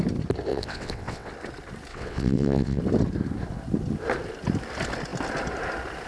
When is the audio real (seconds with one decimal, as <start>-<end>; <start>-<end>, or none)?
0.0-0.5; 1.3-1.9; 2.8-6.1